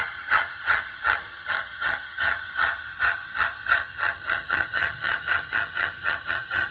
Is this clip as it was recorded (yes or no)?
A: no